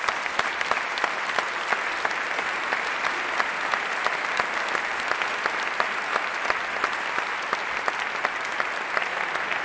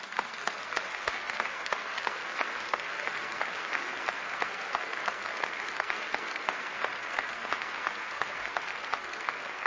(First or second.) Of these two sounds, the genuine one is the first